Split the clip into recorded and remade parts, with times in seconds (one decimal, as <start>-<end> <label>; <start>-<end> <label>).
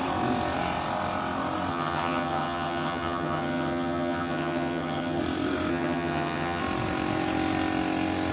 0.0-1.7 recorded; 1.7-5.2 remade; 5.2-5.7 recorded; 5.7-6.6 remade; 6.6-8.3 recorded